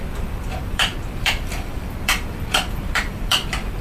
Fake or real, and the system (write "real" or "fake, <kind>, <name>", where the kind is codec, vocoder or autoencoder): fake, vocoder, BigVGAN v2